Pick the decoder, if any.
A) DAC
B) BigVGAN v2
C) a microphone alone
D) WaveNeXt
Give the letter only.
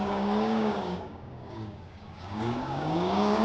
A